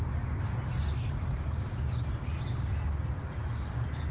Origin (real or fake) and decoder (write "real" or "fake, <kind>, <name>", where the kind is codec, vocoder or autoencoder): real